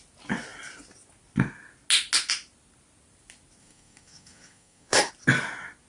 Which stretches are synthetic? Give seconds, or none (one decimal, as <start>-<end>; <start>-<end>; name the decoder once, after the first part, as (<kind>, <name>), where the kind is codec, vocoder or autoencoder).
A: 3.6-5.1 (codec, SNAC)